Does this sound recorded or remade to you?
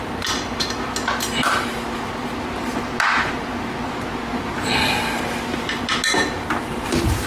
recorded